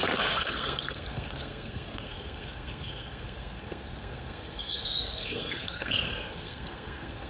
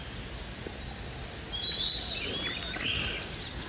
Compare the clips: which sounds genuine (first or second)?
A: second